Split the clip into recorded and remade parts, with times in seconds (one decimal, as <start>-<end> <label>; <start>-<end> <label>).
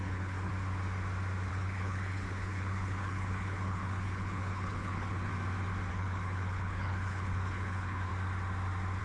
0.0-0.5 remade; 0.5-1.5 recorded; 1.5-5.3 remade; 5.3-5.9 recorded; 5.9-8.1 remade; 8.1-9.0 recorded